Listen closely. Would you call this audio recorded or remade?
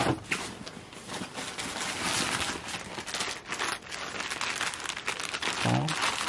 recorded